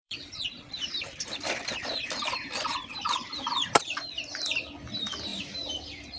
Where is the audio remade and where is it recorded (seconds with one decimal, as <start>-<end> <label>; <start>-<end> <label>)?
0.0-6.2 remade